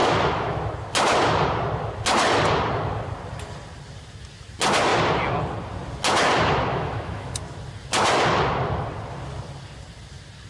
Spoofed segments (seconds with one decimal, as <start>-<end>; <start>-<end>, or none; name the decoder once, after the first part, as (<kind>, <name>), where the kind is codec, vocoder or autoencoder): 0.0-0.6 (autoencoder, DAC-VAE); 6.7-7.3